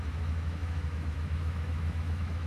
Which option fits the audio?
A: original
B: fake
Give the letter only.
B